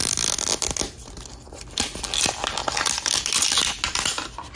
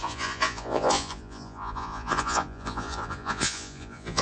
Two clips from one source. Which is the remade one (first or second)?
second